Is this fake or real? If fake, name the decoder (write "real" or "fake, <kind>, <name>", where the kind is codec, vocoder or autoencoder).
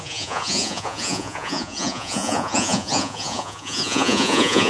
fake, vocoder, Vocos